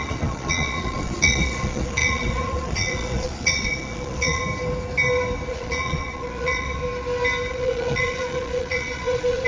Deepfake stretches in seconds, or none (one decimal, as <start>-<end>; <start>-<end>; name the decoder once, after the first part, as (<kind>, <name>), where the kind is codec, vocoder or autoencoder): 0.0-4.4 (vocoder, Vocos); 5.5-6.8; 7.5-9.5